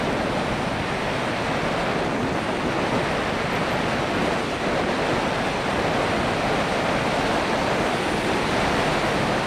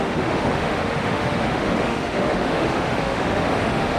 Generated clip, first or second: second